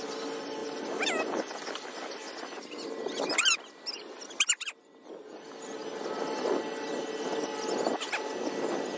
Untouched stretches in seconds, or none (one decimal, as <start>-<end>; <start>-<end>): 0.0-9.0

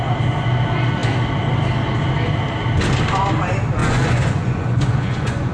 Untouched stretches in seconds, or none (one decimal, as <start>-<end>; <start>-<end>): 0.0-3.8

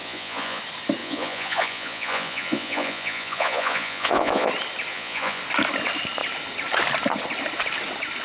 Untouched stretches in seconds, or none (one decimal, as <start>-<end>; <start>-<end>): 0.6-1.0; 4.5-4.9; 5.4-8.2

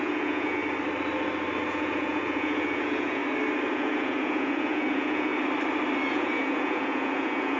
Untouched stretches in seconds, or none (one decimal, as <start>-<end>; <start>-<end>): 0.6-1.7; 3.2-3.7; 5.3-6.1

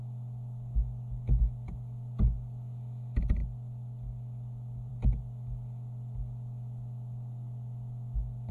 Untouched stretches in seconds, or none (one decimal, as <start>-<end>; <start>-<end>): 0.0-8.5

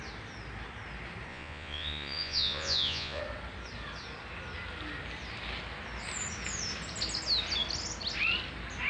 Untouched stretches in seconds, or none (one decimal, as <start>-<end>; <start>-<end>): 0.0-1.3; 3.2-8.9

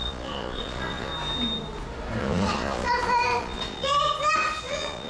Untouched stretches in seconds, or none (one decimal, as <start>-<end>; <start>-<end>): 1.1-2.2; 2.9-3.4; 3.9-4.6

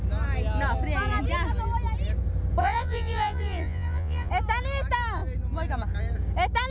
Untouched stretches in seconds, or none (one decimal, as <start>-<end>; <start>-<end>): 0.0-2.6; 4.3-6.7